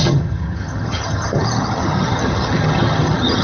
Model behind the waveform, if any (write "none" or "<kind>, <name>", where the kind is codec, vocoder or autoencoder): vocoder, HiFi-GAN